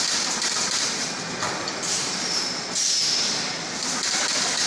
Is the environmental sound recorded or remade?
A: recorded